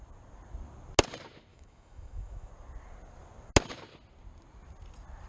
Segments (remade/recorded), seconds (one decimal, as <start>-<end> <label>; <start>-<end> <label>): 0.0-1.5 recorded; 1.5-2.5 remade; 2.5-5.3 recorded